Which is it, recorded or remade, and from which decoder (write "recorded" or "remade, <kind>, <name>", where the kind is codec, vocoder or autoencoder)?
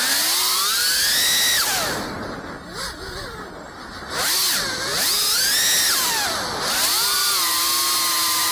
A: recorded